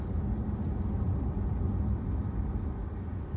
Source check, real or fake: real